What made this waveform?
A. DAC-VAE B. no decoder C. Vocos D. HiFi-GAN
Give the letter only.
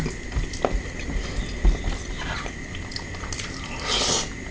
B